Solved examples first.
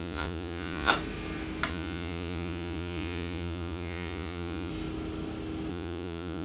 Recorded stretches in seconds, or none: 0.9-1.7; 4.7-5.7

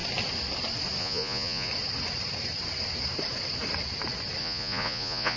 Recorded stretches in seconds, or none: 0.0-1.0; 1.7-4.4

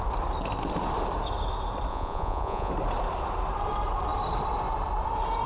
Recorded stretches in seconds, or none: 0.0-1.9; 2.7-5.5

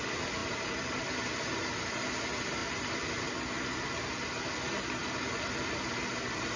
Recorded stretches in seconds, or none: 0.0-6.6

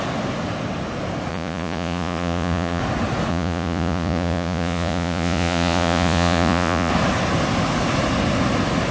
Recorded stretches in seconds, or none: 0.0-1.3; 2.8-3.3; 6.9-8.9

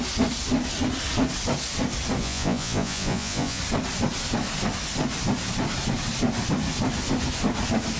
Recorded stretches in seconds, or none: 0.0-2.2; 3.6-8.0

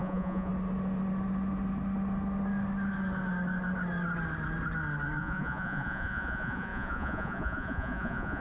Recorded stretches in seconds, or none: 0.5-5.2